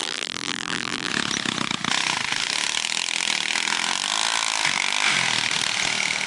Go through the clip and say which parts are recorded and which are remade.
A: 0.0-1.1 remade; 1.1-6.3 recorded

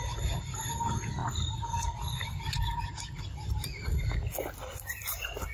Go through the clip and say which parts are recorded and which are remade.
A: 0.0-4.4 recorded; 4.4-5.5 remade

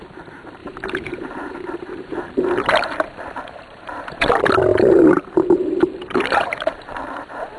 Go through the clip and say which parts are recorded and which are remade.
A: 0.0-0.6 recorded; 0.6-4.3 remade; 4.3-4.7 recorded; 4.7-7.6 remade

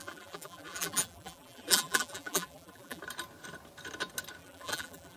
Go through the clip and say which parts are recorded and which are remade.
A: 0.0-3.0 remade; 3.0-4.4 recorded; 4.4-5.2 remade